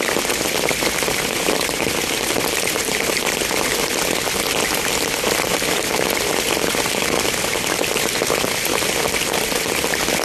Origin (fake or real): fake